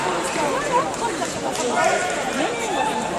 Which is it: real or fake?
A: fake